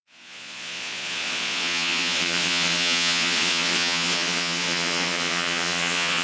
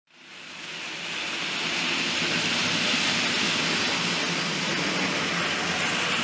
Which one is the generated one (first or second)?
first